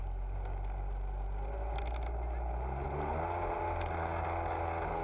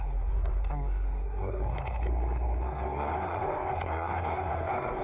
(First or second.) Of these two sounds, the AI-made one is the second